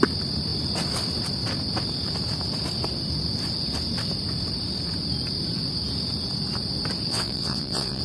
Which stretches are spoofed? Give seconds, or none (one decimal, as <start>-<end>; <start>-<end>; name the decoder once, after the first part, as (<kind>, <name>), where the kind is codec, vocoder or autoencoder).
7.1-8.0 (vocoder, WaveNeXt)